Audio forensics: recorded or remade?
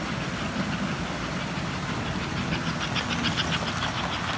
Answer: recorded